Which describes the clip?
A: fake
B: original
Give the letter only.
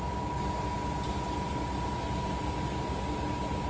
B